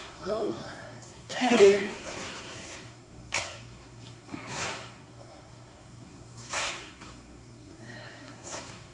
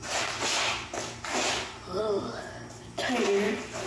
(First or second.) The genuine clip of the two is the second